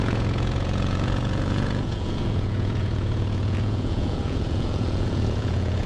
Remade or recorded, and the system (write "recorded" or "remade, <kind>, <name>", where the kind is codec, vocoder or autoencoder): remade, vocoder, Vocos